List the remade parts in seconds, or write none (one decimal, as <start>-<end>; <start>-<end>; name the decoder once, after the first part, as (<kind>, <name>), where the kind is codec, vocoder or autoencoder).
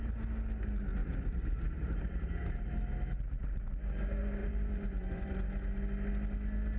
1.0-2.8 (vocoder, BigVGAN v2); 4.4-5.5